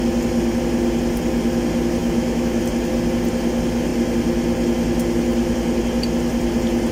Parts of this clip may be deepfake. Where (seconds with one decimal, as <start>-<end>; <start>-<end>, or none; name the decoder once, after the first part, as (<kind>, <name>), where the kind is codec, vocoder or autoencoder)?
2.0-2.6 (autoencoder, DAC-VAE)